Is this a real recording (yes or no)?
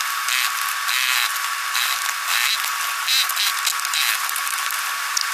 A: yes